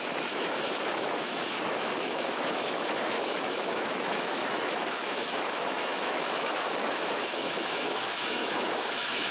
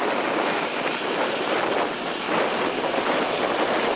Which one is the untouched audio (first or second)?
second